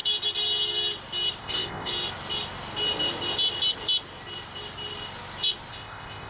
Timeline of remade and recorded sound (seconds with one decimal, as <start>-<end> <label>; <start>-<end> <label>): 0.0-1.4 recorded; 1.4-1.9 remade; 1.9-5.7 recorded; 5.7-6.3 remade